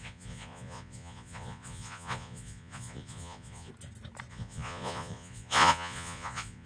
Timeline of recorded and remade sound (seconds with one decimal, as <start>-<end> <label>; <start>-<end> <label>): 0.0-3.7 remade; 3.7-4.3 recorded; 4.3-6.7 remade